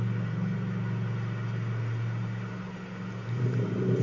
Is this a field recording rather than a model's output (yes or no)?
yes